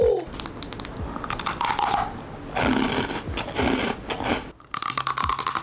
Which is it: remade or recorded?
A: recorded